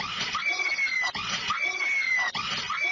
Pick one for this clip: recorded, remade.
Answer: recorded